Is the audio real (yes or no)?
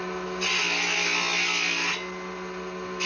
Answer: yes